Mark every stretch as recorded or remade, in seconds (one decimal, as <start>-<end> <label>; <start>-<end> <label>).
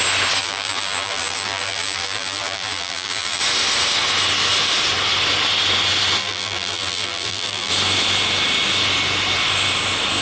0.0-0.4 recorded; 0.4-3.4 remade; 3.4-6.2 recorded; 6.2-7.7 remade; 7.7-10.2 recorded